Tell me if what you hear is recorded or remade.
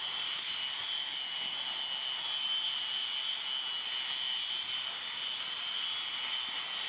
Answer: recorded